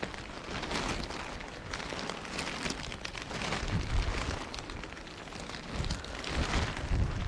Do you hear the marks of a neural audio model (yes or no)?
no